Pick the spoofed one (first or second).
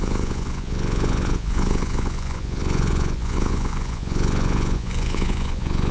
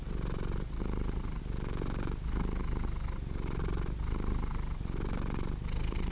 first